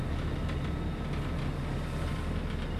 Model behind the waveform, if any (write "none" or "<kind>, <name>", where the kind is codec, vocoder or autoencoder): none